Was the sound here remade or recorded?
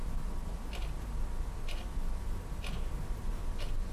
recorded